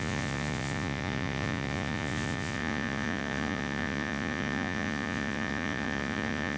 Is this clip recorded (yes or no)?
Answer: no